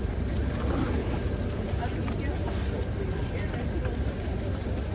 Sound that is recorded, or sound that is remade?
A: recorded